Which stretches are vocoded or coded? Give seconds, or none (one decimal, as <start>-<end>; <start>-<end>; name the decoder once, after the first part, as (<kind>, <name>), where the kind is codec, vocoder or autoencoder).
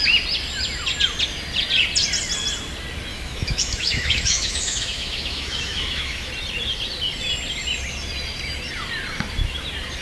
3.1-6.3 (autoencoder, DAC-VAE)